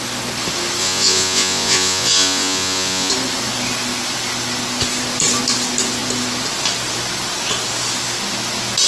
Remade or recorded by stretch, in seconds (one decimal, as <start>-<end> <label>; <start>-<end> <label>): 0.0-0.8 recorded; 0.8-3.1 remade; 3.1-8.9 recorded